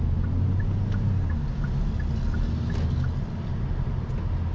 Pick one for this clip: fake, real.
real